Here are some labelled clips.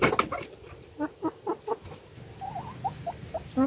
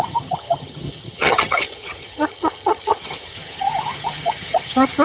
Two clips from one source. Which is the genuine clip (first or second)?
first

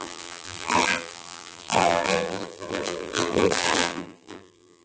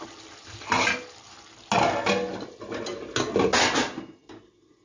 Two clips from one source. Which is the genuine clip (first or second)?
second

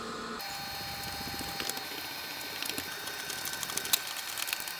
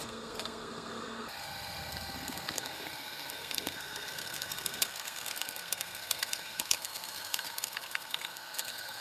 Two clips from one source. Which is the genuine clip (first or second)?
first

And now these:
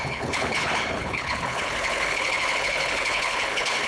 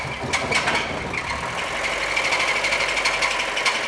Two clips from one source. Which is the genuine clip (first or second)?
second